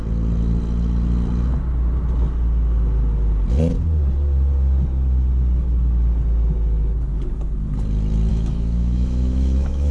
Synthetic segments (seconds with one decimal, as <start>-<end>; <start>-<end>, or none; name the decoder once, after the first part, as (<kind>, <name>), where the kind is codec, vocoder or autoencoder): 8.3-9.9 (autoencoder, DAC-VAE)